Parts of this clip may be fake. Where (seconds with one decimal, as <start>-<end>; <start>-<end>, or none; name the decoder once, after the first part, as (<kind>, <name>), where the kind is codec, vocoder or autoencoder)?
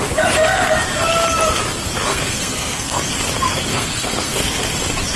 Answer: 2.1-3.0 (codec, SNAC); 3.7-4.6